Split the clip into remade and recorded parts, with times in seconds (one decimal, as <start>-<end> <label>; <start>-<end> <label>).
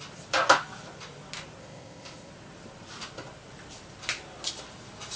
0.0-1.6 recorded; 1.6-2.3 remade; 2.3-5.2 recorded